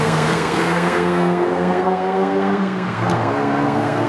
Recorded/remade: remade